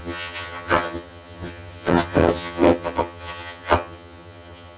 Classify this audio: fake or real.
fake